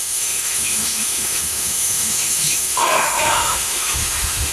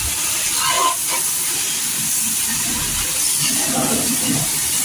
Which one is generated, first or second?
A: first